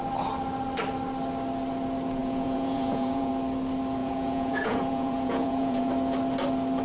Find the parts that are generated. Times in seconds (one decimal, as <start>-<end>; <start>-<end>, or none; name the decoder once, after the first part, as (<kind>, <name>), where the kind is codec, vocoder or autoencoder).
2.2-3.3 (vocoder, Vocos); 4.0-5.9